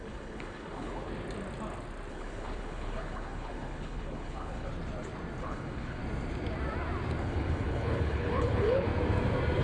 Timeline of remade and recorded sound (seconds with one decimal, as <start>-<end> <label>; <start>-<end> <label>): 0.0-1.1 remade; 1.1-2.1 recorded; 2.1-4.7 remade; 4.7-5.4 recorded; 5.4-6.0 remade; 6.0-7.2 recorded; 7.2-8.9 remade; 8.9-9.6 recorded